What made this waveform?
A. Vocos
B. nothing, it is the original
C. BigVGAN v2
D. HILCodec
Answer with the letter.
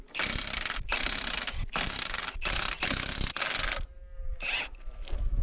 B